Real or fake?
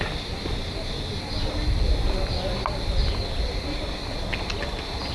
real